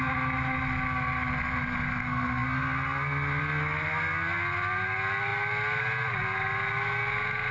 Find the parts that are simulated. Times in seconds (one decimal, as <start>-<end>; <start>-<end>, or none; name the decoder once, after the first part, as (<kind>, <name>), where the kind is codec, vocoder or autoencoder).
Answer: none